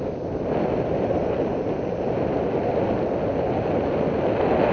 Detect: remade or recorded recorded